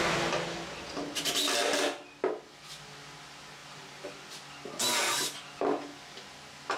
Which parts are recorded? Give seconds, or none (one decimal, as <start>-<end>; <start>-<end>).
0.0-6.8